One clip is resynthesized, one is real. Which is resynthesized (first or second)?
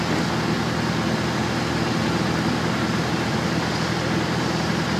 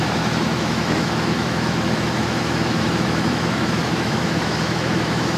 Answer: second